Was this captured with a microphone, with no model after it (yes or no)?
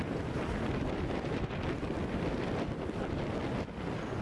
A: yes